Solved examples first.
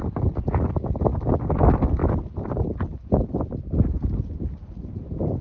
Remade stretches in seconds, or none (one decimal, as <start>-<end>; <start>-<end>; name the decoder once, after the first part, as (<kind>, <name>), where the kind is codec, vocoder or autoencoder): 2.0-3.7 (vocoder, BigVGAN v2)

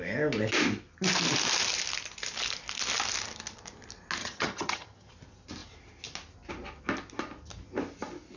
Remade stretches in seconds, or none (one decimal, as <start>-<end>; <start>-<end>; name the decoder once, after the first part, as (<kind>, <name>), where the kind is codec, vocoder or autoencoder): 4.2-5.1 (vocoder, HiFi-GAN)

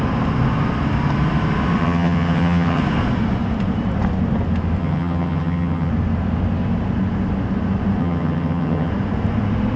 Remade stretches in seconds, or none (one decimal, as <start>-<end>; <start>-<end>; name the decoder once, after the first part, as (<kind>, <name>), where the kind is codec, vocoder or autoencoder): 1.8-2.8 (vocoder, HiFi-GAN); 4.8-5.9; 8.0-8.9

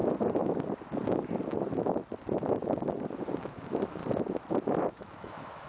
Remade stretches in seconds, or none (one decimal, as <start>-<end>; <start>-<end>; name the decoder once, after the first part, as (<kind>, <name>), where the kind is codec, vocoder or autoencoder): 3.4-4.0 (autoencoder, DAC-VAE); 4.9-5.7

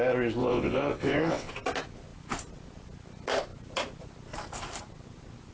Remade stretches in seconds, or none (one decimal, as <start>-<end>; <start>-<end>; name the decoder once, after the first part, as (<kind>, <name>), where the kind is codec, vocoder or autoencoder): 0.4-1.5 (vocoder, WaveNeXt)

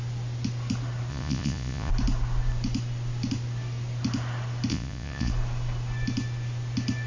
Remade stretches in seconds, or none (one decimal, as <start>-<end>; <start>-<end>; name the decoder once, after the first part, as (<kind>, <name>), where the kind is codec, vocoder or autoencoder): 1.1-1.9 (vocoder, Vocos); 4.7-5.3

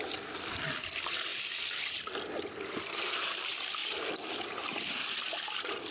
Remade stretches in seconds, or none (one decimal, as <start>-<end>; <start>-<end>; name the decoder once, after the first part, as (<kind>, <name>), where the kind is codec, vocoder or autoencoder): 1.3-1.9 (vocoder, BigVGAN v2)